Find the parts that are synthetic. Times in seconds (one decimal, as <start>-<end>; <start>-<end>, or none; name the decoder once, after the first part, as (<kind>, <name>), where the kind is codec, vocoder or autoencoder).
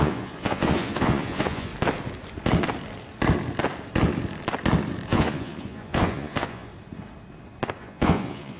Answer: 0.0-1.7 (vocoder, Vocos); 5.1-6.7; 7.8-8.6